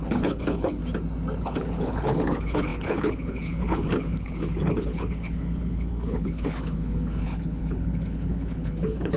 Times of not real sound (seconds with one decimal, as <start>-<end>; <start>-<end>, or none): 0.0-0.8; 1.4-9.2

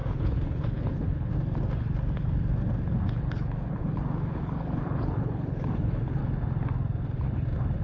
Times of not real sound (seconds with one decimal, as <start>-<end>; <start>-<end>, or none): 0.0-1.3; 3.2-6.2

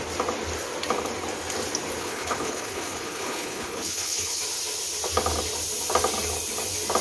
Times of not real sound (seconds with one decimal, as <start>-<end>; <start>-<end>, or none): 2.0-4.4